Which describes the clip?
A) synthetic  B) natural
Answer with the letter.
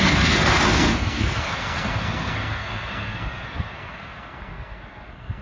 A